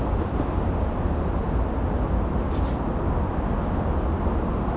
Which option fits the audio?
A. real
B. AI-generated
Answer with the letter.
A